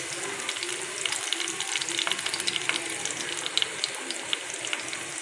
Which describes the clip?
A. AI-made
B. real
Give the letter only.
B